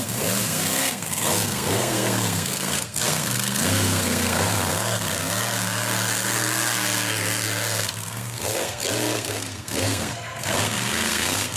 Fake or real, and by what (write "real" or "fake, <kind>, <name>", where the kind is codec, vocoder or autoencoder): fake, codec, SNAC